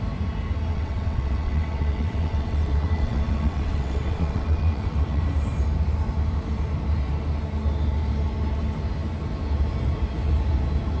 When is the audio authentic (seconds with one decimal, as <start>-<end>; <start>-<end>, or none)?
0.0-0.7; 5.2-11.0